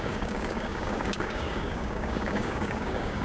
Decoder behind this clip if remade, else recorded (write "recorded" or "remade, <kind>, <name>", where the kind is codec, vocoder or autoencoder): remade, codec, DAC